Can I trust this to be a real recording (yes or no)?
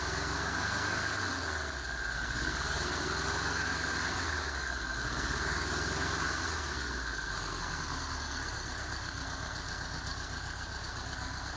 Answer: no